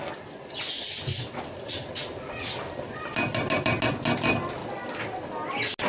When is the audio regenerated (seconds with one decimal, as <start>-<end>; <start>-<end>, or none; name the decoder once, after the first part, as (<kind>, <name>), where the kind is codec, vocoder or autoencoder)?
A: 1.1-2.2 (vocoder, BigVGAN v2)